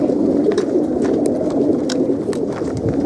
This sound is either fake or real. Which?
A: real